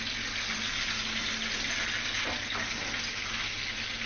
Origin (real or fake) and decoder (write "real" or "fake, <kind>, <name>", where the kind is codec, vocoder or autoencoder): real